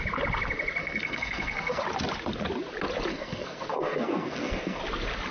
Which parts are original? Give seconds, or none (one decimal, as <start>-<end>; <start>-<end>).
0.0-0.8; 1.8-3.1; 4.8-5.3